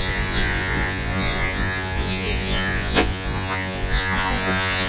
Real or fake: fake